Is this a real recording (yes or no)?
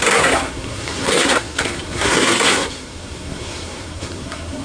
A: no